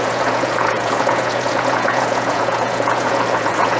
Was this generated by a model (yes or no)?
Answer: yes